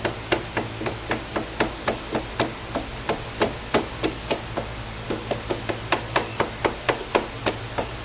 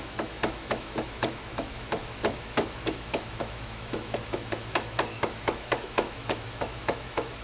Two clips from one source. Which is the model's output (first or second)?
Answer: second